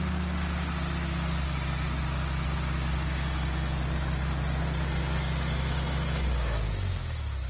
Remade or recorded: recorded